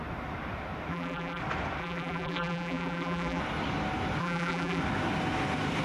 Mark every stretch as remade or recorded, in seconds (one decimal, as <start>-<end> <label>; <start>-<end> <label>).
0.0-0.9 recorded; 0.9-1.4 remade; 1.4-1.8 recorded; 1.8-3.4 remade; 3.4-4.2 recorded; 4.2-4.8 remade; 4.8-5.8 recorded